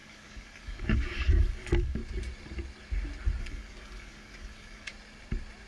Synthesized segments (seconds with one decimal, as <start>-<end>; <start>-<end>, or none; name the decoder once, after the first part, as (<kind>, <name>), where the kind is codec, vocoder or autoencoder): 0.0-2.0 (codec, DAC); 3.4-4.9